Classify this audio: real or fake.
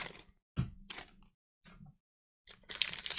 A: fake